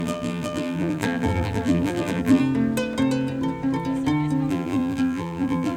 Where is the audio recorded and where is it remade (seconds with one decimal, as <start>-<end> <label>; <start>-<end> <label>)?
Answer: 0.0-2.4 remade; 2.4-4.5 recorded; 4.5-5.8 remade